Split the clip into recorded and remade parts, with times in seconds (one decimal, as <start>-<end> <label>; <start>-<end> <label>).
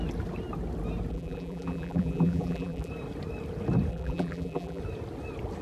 0.0-1.1 recorded; 1.1-2.9 remade; 2.9-3.9 recorded; 3.9-4.8 remade; 4.8-5.6 recorded